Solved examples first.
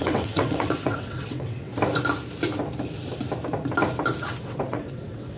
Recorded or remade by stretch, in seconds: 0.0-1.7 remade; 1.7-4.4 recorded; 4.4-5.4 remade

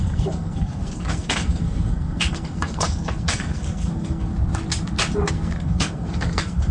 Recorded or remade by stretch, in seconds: 0.0-4.3 remade; 4.3-5.3 recorded; 5.3-6.7 remade

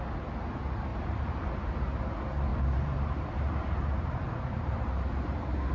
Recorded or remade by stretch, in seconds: 0.0-0.9 recorded; 0.9-1.5 remade; 1.5-2.5 recorded; 2.5-5.7 remade

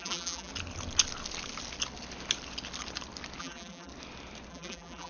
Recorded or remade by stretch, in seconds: 0.0-0.5 remade; 0.5-3.4 recorded; 3.4-3.9 remade; 3.9-4.5 recorded; 4.5-5.1 remade

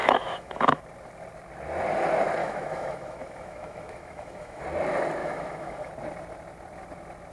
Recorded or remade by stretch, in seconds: 0.0-0.8 remade; 0.8-2.4 recorded; 2.4-4.6 remade; 4.6-5.2 recorded; 5.2-5.9 remade; 5.9-7.3 recorded

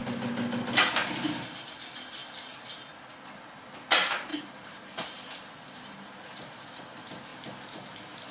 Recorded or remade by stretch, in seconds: 0.0-4.3 recorded; 4.3-6.8 remade; 6.8-8.3 recorded

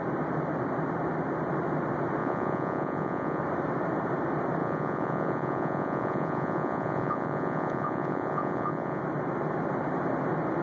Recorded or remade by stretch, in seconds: 0.0-2.2 recorded; 2.2-3.4 remade; 3.4-4.6 recorded; 4.6-9.0 remade; 9.0-10.6 recorded

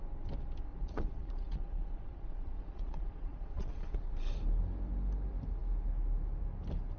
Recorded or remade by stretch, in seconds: 0.0-0.7 recorded; 0.7-4.1 remade; 4.1-7.0 recorded